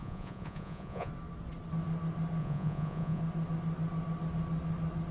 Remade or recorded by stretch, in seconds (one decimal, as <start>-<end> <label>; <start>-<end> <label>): 0.0-1.1 remade; 1.1-2.4 recorded; 2.4-3.2 remade; 3.2-5.1 recorded